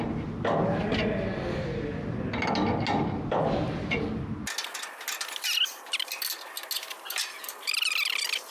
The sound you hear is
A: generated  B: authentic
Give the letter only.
B